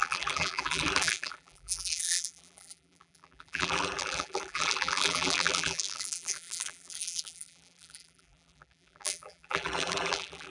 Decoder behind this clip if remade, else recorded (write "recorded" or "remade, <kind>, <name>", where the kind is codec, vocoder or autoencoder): remade, vocoder, BigVGAN v2